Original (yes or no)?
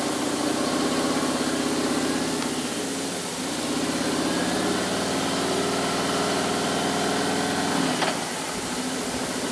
yes